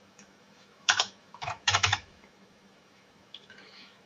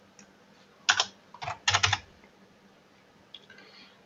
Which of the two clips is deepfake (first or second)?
first